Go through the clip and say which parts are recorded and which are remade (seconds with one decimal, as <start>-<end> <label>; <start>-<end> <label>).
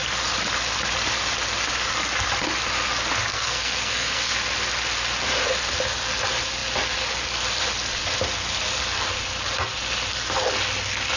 0.0-3.3 recorded; 3.3-4.3 remade; 4.3-11.2 recorded